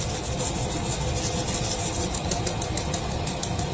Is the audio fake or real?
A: real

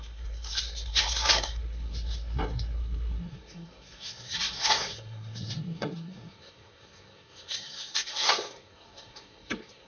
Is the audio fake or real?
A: fake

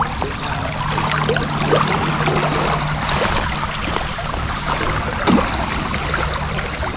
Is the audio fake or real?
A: real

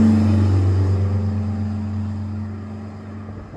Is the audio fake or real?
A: real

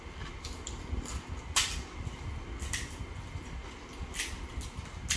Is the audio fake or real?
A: real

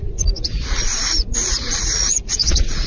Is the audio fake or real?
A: fake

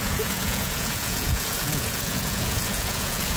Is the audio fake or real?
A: fake